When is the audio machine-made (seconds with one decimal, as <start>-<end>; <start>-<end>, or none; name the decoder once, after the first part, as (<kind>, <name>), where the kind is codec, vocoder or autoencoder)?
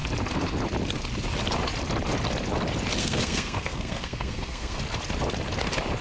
3.0-4.8 (codec, SNAC)